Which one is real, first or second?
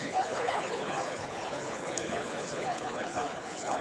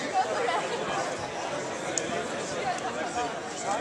second